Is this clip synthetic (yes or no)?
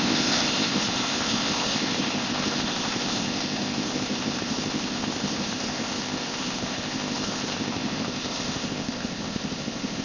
yes